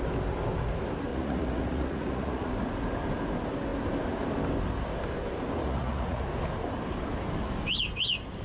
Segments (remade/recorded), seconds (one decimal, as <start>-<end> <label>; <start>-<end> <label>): 0.0-1.1 recorded; 1.1-2.5 remade; 2.5-5.6 recorded; 5.6-6.2 remade; 6.2-8.4 recorded